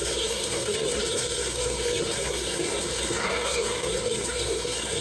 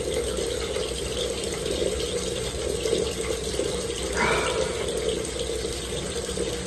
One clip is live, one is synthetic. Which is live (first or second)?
second